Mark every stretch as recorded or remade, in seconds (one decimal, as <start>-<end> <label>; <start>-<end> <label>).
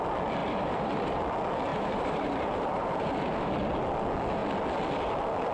0.0-0.4 recorded; 0.4-1.2 remade; 1.2-1.7 recorded; 1.7-3.5 remade; 3.5-5.5 recorded